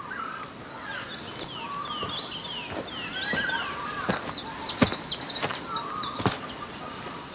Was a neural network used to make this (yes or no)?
no